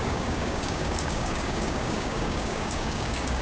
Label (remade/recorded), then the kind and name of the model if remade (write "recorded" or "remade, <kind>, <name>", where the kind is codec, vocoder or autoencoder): remade, codec, DAC